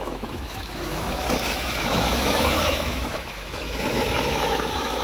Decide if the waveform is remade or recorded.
remade